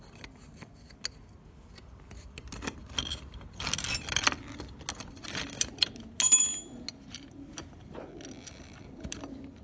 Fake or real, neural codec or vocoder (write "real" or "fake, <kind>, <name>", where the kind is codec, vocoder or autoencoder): real